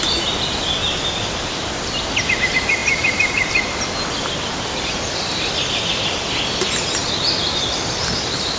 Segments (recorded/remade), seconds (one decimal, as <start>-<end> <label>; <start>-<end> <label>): 0.0-2.8 recorded; 2.8-3.6 remade; 3.6-8.6 recorded